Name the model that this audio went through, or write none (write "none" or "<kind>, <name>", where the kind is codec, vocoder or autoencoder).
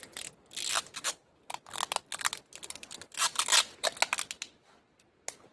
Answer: none